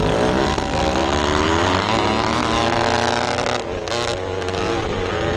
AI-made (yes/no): no